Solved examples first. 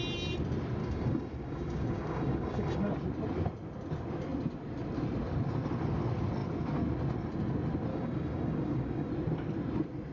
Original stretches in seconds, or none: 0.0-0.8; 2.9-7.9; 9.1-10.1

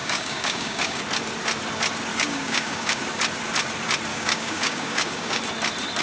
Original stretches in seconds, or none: 1.0-2.1; 3.0-4.1; 5.4-6.0

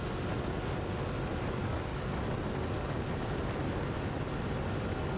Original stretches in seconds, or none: 0.0-1.6; 2.1-5.2

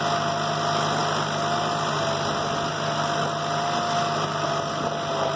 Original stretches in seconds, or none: 0.0-5.4

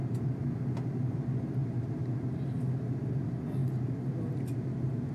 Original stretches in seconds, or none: 0.0-5.1

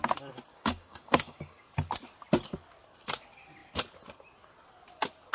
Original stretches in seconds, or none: 0.0-0.5; 1.6-5.3